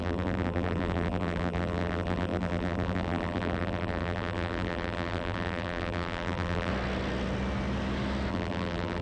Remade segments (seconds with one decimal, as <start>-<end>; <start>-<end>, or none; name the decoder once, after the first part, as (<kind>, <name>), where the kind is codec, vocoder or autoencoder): 0.0-6.7 (vocoder, BigVGAN v2); 8.3-9.0